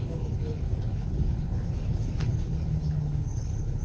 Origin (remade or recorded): remade